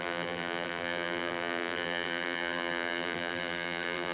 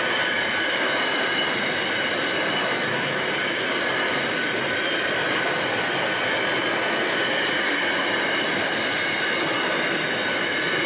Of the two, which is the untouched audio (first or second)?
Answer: second